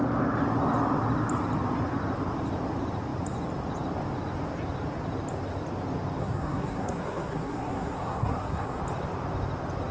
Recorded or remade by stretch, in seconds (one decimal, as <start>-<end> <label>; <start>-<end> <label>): 0.0-6.2 recorded; 6.2-8.8 remade; 8.8-9.9 recorded